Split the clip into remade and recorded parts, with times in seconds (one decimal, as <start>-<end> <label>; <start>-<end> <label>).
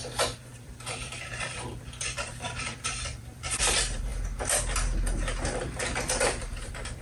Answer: 0.0-4.1 remade; 4.1-6.2 recorded; 6.2-7.0 remade